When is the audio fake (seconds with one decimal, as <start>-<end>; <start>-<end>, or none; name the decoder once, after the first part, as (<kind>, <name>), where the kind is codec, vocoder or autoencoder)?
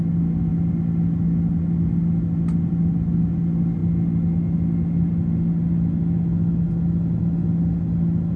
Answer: none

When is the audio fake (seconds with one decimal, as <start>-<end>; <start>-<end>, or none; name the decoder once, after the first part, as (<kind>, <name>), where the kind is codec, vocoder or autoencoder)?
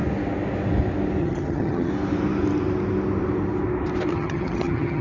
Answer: 1.2-1.9 (vocoder, HiFi-GAN); 4.1-5.0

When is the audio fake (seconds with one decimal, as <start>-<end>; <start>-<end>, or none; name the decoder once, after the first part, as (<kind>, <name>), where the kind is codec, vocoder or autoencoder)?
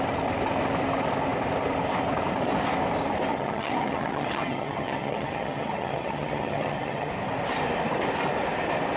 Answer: 3.3-7.1 (vocoder, HiFi-GAN)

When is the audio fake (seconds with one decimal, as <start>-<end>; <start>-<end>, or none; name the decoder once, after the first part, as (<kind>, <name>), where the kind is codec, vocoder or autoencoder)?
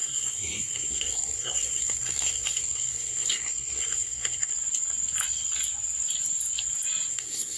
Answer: 0.0-4.5 (codec, SNAC); 7.1-7.6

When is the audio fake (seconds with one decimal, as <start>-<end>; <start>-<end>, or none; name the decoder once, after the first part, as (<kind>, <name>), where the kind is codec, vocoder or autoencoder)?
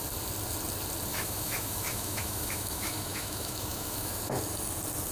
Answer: 1.1-4.2 (autoencoder, DAC-VAE)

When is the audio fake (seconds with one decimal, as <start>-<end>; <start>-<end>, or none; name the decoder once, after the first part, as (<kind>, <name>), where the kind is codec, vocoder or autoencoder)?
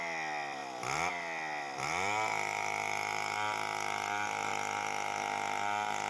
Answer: none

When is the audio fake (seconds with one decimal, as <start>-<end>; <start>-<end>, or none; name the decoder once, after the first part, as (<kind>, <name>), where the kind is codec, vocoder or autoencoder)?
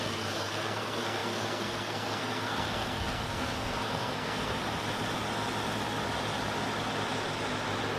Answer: 0.0-4.6 (codec, SNAC)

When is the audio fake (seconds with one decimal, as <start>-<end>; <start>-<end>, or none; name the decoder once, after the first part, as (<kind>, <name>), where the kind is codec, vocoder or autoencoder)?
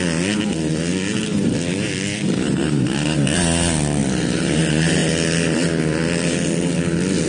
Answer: 1.3-3.4 (vocoder, BigVGAN v2); 4.0-4.6; 5.0-5.8